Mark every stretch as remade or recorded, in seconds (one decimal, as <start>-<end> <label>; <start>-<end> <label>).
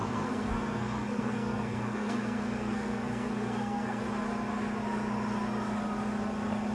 0.0-4.0 remade; 4.0-6.7 recorded